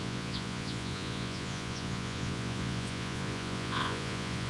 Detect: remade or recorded remade